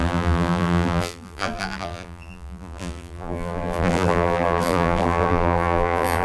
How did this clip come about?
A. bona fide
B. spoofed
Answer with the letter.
B